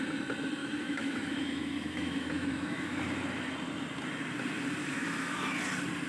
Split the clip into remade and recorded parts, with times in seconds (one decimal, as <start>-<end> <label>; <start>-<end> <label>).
0.0-0.6 recorded; 0.6-3.0 remade; 3.0-4.8 recorded; 4.8-5.4 remade; 5.4-6.1 recorded